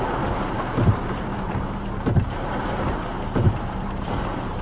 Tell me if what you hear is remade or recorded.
remade